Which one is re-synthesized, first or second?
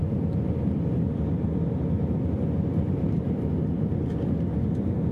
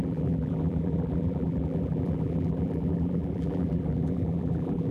second